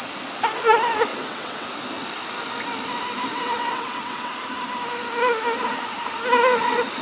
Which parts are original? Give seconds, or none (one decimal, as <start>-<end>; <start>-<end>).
0.0-1.1; 1.7-3.3; 4.3-7.0